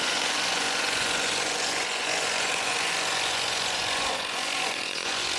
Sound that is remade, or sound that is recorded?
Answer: remade